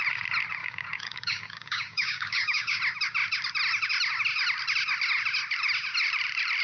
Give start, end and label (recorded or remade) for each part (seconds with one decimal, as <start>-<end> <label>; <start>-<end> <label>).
0.0-0.6 recorded; 0.6-2.8 remade; 2.8-6.6 recorded

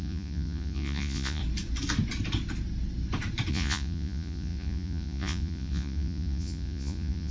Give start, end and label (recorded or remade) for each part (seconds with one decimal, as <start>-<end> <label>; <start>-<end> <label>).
0.0-1.4 remade; 1.4-3.5 recorded; 3.5-7.3 remade

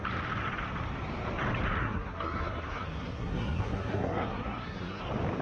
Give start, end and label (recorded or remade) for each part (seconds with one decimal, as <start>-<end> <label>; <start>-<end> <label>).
0.0-1.8 recorded; 1.8-5.0 remade; 5.0-5.4 recorded

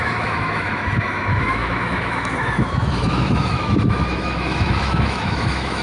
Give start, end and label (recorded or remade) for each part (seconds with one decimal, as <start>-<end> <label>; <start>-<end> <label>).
0.0-5.8 remade